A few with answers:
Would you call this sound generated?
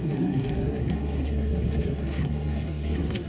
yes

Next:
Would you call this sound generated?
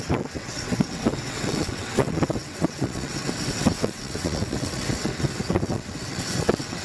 yes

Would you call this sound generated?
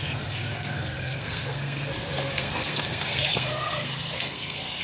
yes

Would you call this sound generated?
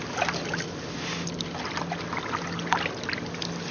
no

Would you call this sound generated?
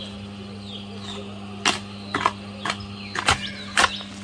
no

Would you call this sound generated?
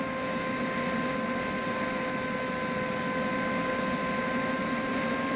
no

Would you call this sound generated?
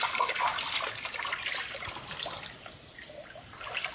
no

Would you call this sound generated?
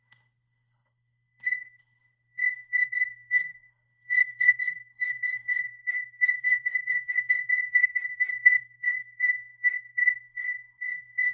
yes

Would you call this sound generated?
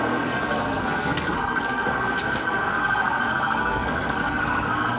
yes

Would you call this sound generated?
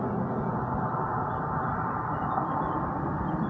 no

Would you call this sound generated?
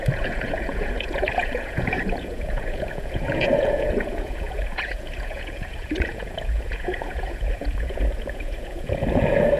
yes